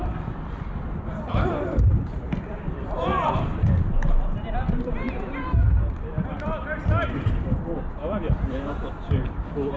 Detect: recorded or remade remade